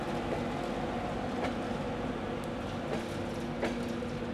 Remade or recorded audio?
recorded